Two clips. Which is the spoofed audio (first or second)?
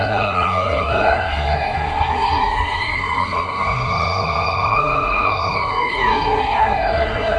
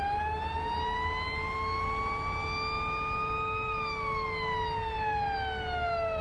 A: first